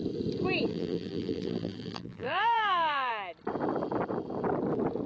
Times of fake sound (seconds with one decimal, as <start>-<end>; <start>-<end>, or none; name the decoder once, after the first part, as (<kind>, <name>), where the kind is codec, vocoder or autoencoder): 0.7-3.1 (vocoder, BigVGAN v2)